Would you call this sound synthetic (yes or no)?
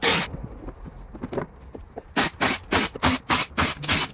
no